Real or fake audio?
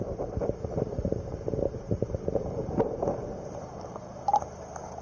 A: fake